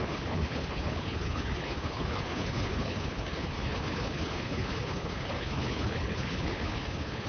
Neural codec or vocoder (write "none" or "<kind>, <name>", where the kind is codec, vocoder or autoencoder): codec, HILCodec